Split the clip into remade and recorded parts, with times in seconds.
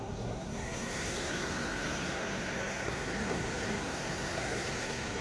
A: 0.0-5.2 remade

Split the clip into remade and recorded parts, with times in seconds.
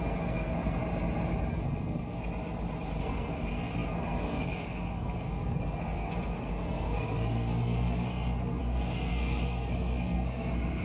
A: 0.0-0.8 remade; 0.8-1.5 recorded; 1.5-2.2 remade; 2.2-3.0 recorded; 3.0-10.8 remade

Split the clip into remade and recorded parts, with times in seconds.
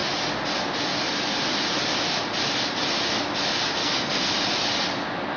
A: 0.0-3.8 recorded; 3.8-4.3 remade; 4.3-5.4 recorded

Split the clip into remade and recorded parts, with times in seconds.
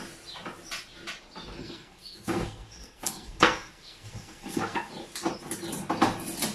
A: 0.0-1.6 recorded; 1.6-4.9 remade; 4.9-6.5 recorded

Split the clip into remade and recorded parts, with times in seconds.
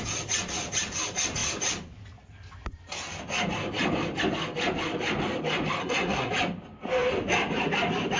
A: 0.0-5.8 recorded; 5.8-6.3 remade; 6.3-8.2 recorded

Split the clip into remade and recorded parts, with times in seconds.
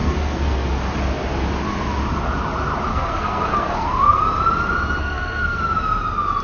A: 0.0-0.8 remade; 0.8-2.9 recorded; 2.9-4.2 remade; 4.2-5.0 recorded; 5.0-5.6 remade; 5.6-6.4 recorded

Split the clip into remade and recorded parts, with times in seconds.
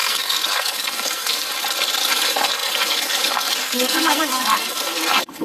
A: 0.0-1.5 remade; 1.5-2.1 recorded; 2.1-5.4 remade